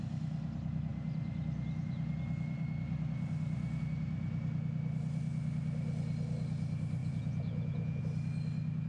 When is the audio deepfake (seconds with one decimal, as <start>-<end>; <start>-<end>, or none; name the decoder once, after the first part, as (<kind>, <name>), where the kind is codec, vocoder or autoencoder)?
7.0-8.0 (vocoder, Vocos)